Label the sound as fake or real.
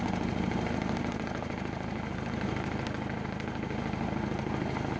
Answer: real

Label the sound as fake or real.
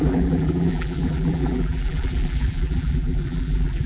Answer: fake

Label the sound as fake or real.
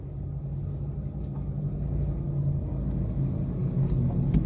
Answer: real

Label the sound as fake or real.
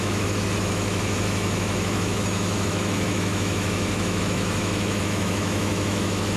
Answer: fake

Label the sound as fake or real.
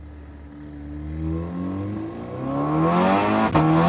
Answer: real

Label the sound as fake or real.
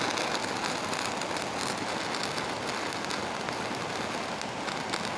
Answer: real